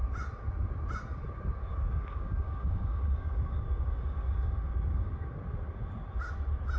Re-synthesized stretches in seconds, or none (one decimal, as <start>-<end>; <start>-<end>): 1.7-5.1